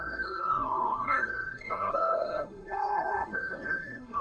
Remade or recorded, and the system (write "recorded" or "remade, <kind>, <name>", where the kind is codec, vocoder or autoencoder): remade, codec, SNAC